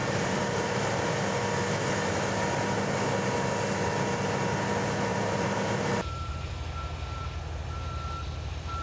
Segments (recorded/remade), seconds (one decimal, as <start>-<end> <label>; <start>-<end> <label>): 0.0-1.0 remade; 1.0-5.1 recorded; 5.1-6.5 remade; 6.5-8.8 recorded